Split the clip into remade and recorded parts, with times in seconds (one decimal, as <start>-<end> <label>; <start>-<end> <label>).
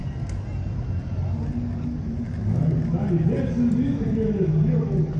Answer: 0.0-5.2 recorded